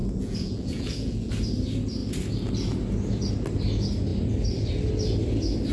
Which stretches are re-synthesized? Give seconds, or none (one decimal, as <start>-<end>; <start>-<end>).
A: 0.0-1.3